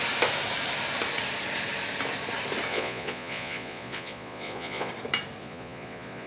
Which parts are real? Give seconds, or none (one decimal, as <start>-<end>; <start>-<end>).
0.0-2.7; 4.9-5.4